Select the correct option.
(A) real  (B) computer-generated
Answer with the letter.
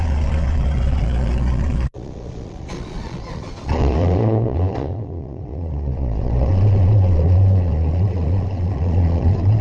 B